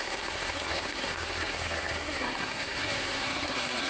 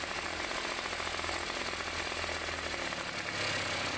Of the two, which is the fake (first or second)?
first